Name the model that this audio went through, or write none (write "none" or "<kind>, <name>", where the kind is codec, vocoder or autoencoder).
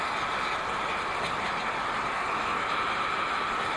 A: none